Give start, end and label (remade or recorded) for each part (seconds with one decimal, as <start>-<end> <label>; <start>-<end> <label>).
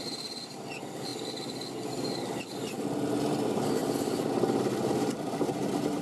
0.0-6.0 recorded